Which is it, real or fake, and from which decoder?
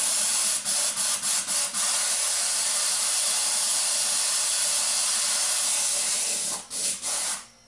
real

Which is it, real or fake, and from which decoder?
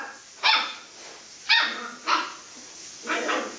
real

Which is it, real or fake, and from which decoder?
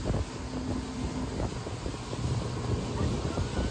real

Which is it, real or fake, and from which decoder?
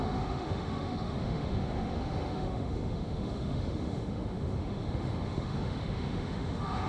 fake, autoencoder, DAC-VAE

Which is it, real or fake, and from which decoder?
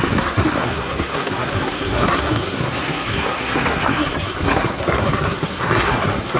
fake, codec, SNAC